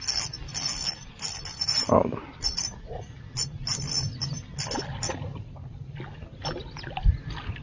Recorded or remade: recorded